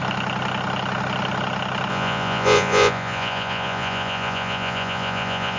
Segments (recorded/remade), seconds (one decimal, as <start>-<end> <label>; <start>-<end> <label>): 0.0-1.9 recorded; 1.9-5.6 remade